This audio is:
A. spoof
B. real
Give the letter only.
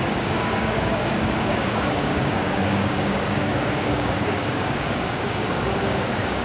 A